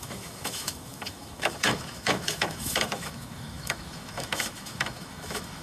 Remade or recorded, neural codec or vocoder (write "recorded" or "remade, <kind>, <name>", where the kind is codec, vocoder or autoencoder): remade, autoencoder, DAC-VAE